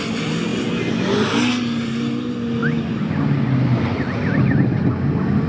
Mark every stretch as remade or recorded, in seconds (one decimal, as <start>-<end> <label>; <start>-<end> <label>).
0.0-5.5 recorded